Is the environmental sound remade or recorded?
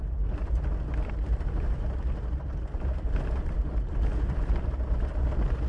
recorded